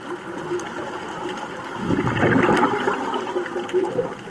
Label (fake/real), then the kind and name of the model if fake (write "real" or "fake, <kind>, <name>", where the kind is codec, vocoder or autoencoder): real